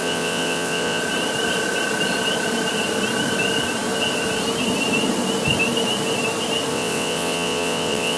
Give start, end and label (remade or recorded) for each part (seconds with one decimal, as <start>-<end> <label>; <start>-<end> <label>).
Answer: 0.0-1.0 remade; 1.0-6.7 recorded; 6.7-8.2 remade